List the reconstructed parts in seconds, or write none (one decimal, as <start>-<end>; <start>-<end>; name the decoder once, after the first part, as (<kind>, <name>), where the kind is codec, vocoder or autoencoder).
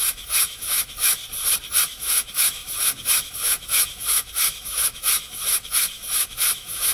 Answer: 0.0-1.2 (autoencoder, DAC-VAE); 1.8-6.9